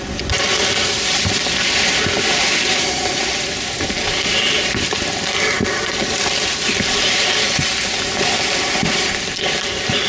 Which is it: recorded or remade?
recorded